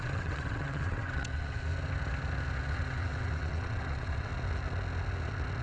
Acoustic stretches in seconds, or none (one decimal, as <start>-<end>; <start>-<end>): 1.7-2.6; 4.3-5.6